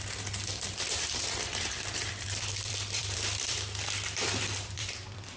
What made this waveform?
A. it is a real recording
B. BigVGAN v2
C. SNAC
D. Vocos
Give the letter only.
B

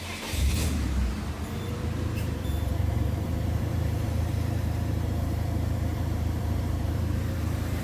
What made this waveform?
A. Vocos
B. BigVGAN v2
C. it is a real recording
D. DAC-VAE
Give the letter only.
B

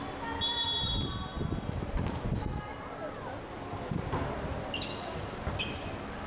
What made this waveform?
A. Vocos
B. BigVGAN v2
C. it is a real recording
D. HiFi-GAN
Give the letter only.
C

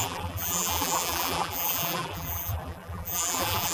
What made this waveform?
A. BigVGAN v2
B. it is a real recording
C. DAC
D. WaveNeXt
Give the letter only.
A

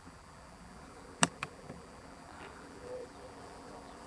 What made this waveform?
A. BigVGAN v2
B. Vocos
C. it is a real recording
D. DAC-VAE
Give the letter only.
A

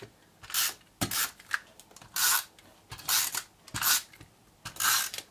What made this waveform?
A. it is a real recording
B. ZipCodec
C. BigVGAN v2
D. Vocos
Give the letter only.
A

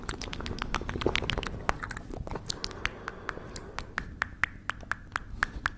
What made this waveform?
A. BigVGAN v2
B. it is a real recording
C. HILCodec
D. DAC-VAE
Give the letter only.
B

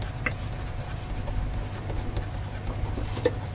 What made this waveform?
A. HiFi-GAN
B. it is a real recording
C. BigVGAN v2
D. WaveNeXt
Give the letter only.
B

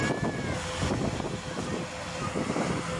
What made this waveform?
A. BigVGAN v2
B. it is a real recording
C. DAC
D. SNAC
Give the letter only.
B